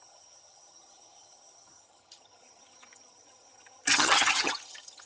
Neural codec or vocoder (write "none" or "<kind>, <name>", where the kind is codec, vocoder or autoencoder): vocoder, HiFi-GAN